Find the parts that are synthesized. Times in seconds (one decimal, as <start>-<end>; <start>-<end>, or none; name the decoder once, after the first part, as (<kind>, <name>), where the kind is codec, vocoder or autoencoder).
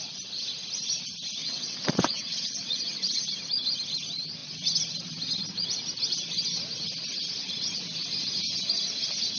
1.4-3.2 (vocoder, WaveNeXt)